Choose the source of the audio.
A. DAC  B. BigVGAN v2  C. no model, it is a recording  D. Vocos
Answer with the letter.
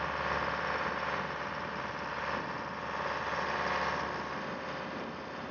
C